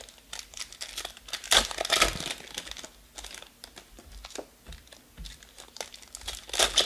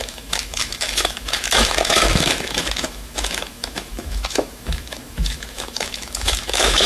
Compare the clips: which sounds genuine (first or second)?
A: first